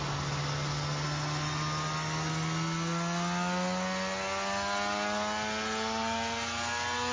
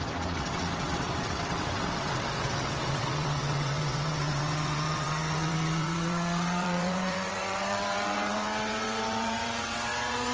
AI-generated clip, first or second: second